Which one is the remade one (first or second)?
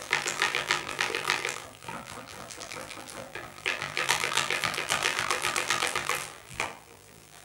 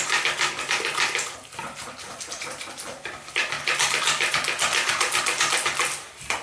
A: first